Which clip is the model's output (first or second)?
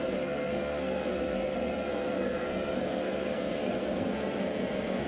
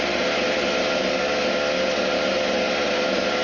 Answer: first